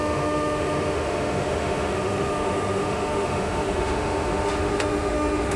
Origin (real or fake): fake